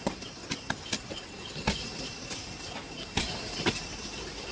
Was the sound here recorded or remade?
recorded